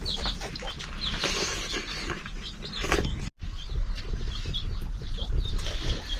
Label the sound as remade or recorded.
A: recorded